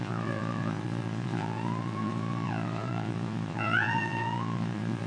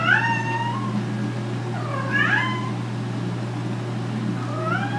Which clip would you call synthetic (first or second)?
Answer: first